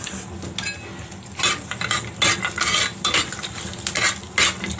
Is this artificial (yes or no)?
no